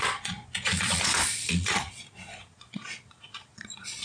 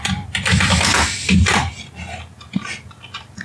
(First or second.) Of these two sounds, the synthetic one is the first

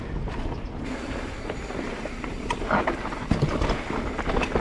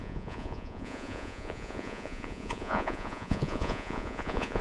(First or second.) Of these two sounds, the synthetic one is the second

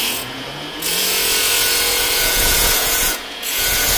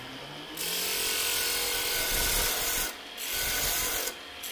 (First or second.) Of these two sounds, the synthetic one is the first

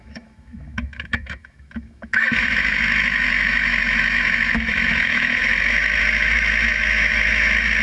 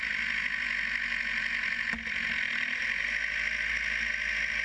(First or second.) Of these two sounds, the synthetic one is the first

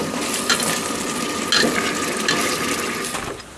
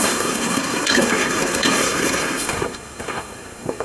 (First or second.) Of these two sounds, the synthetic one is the second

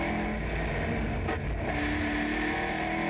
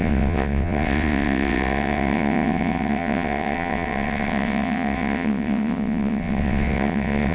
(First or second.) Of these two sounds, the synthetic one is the second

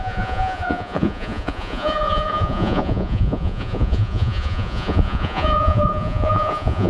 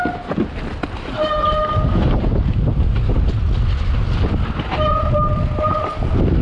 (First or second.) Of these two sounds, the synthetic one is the first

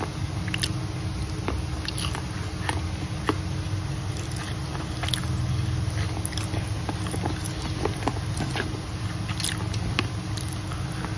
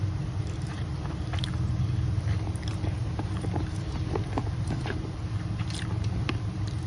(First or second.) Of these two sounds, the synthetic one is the second